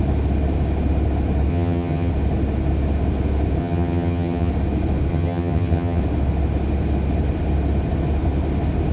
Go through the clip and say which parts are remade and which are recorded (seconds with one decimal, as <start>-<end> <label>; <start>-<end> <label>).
0.0-1.5 recorded; 1.5-2.1 remade; 2.1-3.6 recorded; 3.6-4.5 remade; 4.5-5.1 recorded; 5.1-6.0 remade; 6.0-8.9 recorded